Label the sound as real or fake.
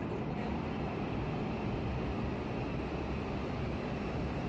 real